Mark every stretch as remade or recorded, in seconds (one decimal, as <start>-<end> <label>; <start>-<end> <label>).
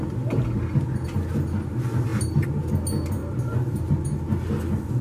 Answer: 0.0-5.0 recorded